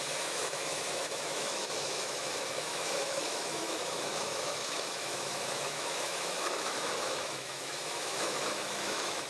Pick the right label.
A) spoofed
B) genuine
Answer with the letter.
A